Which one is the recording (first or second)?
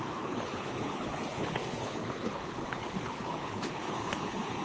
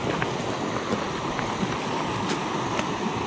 second